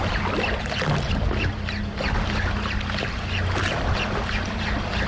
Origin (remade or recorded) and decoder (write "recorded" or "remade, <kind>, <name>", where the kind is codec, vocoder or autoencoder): recorded